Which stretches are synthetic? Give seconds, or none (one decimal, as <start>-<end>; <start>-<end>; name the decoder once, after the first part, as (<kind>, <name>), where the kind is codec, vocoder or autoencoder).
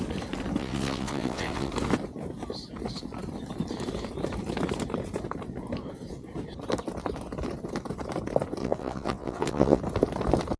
0.6-1.7 (vocoder, WaveNeXt); 8.6-9.8